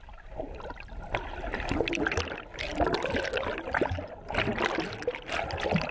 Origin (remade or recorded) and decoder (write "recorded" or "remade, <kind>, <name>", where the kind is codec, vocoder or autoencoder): recorded